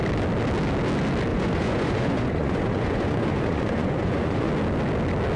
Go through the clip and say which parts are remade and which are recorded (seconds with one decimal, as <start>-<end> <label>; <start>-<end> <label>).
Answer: 0.0-1.3 recorded; 1.3-4.5 remade; 4.5-5.4 recorded